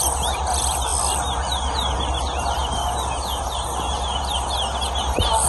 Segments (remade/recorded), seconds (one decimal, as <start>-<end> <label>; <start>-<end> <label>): 0.0-5.5 recorded